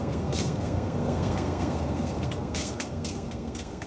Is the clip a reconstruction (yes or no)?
yes